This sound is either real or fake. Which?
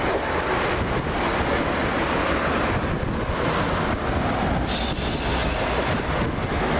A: real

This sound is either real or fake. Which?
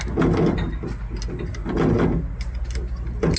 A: real